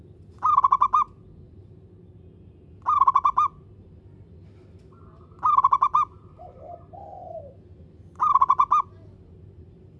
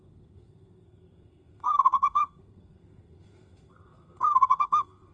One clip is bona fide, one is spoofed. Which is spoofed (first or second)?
second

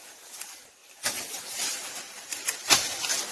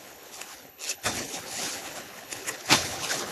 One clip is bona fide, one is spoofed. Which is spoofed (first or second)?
second